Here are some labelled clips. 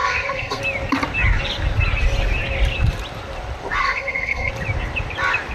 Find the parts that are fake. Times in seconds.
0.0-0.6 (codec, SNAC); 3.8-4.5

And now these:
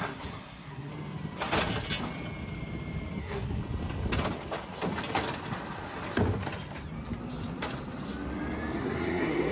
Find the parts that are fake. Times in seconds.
0.0-0.9 (codec, SNAC); 3.2-3.6; 8.8-9.5

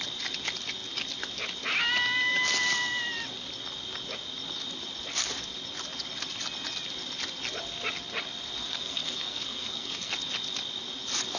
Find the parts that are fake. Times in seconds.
8.6-10.1 (codec, SNAC)

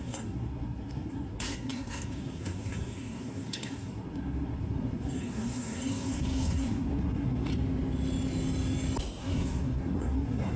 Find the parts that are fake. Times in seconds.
0.0-7.5 (codec, SNAC); 9.2-10.6

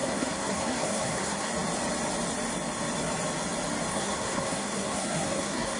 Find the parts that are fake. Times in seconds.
0.0-1.5 (codec, SNAC); 3.9-5.8

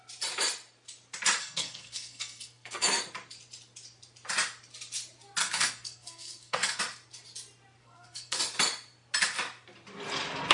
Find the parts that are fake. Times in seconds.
1.4-3.0 (codec, SNAC); 5.4-6.8; 7.8-8.4

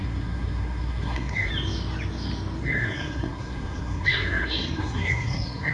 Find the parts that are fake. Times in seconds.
0.0-1.5 (codec, SNAC); 2.6-5.7